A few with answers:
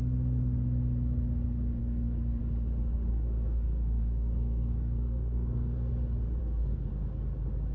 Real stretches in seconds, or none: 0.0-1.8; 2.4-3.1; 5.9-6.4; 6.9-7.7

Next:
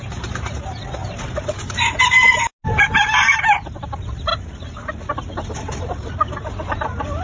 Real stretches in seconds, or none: 0.0-7.2